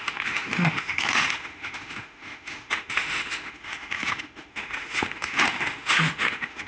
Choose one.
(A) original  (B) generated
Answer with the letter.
B